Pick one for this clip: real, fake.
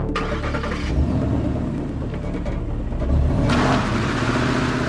real